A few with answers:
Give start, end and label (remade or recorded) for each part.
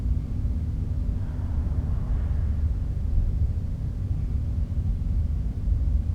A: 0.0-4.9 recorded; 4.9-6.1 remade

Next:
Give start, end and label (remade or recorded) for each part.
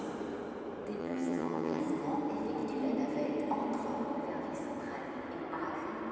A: 0.0-1.0 recorded; 1.0-1.8 remade; 1.8-6.1 recorded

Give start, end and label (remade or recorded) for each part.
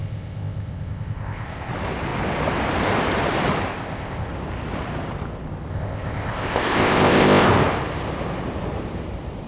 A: 0.0-1.7 remade; 1.7-3.7 recorded; 3.7-4.3 remade; 4.3-5.7 recorded; 5.7-7.5 remade; 7.5-9.5 recorded